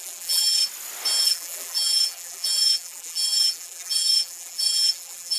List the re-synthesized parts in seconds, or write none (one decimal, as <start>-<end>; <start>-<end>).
0.0-0.6; 1.2-5.4